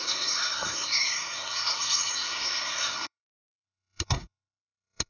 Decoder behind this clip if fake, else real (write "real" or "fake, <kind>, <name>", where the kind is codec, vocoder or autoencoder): fake, codec, SNAC